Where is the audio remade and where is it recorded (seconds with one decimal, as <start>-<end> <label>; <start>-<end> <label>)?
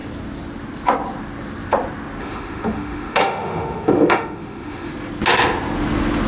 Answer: 0.0-2.2 recorded; 2.2-4.9 remade; 4.9-6.3 recorded